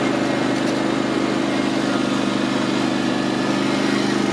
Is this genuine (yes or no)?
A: yes